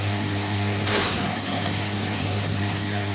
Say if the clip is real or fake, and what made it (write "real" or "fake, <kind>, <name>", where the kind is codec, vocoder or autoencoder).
fake, codec, SNAC